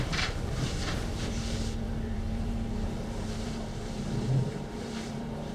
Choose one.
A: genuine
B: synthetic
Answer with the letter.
B